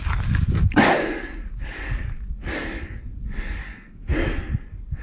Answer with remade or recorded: remade